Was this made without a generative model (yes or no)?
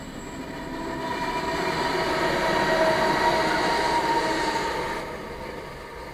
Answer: yes